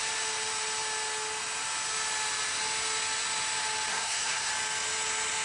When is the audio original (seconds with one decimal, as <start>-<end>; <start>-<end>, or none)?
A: 0.0-3.9; 4.5-5.4